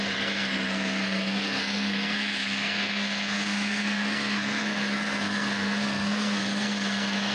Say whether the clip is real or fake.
fake